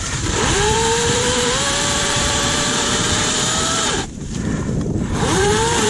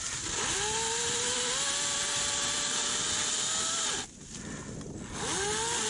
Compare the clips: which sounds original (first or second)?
second